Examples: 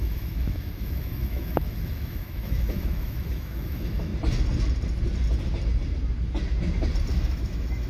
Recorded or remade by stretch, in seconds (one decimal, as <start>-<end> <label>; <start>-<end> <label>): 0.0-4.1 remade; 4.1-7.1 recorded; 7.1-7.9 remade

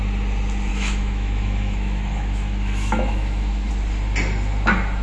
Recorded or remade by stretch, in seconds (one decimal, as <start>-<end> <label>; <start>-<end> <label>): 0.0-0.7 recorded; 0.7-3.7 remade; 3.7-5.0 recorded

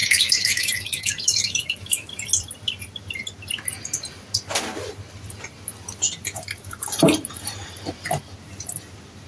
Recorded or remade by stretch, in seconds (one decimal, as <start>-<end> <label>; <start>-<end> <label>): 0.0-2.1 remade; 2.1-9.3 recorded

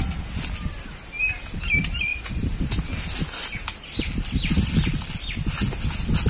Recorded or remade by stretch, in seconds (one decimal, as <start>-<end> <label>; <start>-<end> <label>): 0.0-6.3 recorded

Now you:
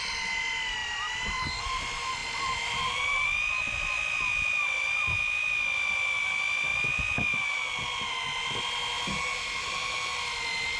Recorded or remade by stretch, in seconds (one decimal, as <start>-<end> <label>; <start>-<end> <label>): 0.0-10.8 recorded